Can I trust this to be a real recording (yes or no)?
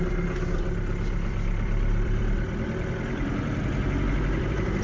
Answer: no